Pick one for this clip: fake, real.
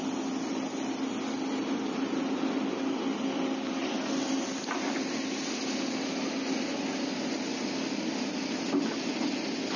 real